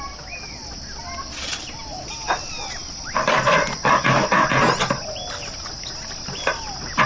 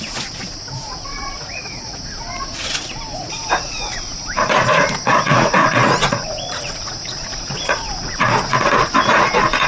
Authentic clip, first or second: first